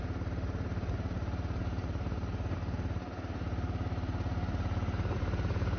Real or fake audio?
real